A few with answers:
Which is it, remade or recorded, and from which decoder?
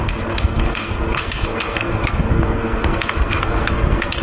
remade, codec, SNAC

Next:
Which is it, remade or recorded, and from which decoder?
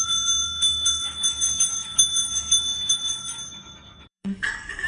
remade, codec, DAC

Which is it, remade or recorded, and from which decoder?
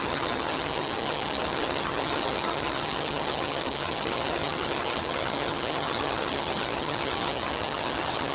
remade, vocoder, HiFi-GAN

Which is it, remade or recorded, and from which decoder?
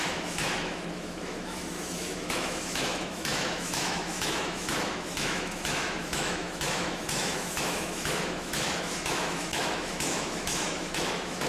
remade, autoencoder, DAC-VAE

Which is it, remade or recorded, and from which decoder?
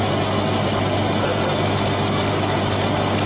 recorded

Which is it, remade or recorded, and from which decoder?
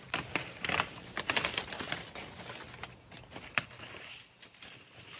recorded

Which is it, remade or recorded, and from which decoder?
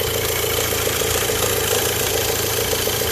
remade, vocoder, BigVGAN v2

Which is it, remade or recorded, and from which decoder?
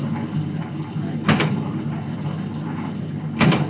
recorded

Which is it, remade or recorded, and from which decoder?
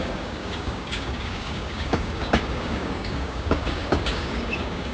remade, codec, DAC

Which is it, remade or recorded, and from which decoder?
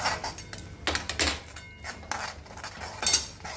recorded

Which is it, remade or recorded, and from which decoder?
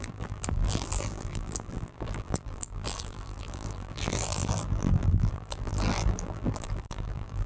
remade, vocoder, BigVGAN v2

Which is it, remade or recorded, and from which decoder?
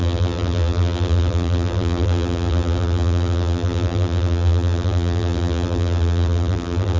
remade, vocoder, BigVGAN v2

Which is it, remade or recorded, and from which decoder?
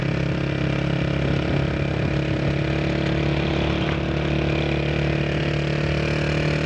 recorded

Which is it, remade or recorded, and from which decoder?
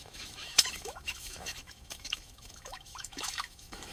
remade, autoencoder, DAC-VAE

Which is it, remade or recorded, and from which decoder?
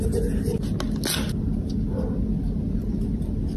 recorded